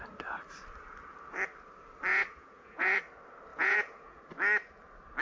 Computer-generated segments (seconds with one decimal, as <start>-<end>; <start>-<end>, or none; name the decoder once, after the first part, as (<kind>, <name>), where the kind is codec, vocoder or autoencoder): 2.1-3.0 (vocoder, Vocos); 3.5-4.2

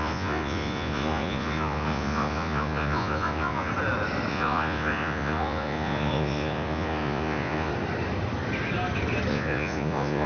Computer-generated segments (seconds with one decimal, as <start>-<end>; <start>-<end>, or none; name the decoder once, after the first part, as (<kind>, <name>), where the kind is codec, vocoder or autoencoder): 0.0-3.7 (vocoder, Vocos); 4.3-7.7; 9.3-10.3

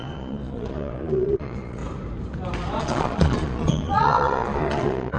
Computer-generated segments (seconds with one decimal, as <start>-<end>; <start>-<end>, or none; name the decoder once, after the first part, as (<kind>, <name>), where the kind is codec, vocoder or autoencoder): 0.0-1.8 (vocoder, Vocos); 2.8-5.2

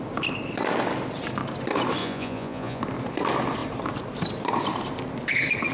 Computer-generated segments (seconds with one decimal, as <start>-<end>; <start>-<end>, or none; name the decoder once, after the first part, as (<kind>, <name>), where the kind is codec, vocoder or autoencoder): 2.0-2.8 (vocoder, Vocos)

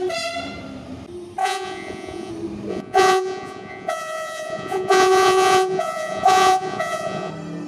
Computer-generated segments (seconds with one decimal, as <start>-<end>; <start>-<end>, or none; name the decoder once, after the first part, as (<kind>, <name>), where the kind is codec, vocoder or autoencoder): 1.4-2.3 (vocoder, Vocos); 2.7-7.3

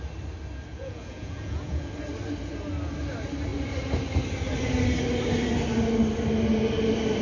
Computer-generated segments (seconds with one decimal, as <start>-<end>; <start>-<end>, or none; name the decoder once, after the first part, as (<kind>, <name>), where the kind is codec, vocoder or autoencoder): 0.7-1.9 (vocoder, Vocos)

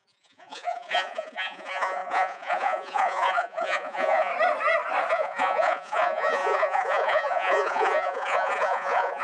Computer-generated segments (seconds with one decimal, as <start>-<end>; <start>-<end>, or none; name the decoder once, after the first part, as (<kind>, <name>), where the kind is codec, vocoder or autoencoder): 0.0-4.3 (vocoder, Vocos); 5.1-9.2